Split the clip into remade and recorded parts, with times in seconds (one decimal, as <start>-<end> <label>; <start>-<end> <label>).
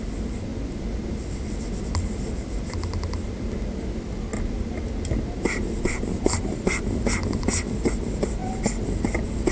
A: 0.0-9.5 recorded